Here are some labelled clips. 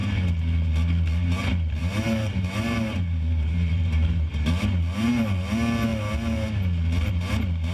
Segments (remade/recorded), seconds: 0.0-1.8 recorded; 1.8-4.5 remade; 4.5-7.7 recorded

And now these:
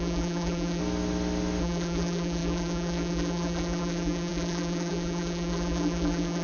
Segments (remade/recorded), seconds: 0.0-0.8 remade; 0.8-1.6 recorded; 1.6-6.4 remade

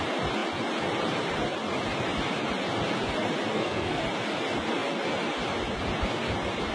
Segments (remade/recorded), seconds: 0.0-3.5 recorded; 3.5-4.0 remade; 4.0-6.7 recorded